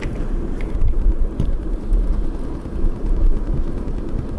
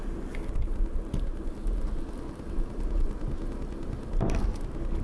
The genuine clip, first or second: second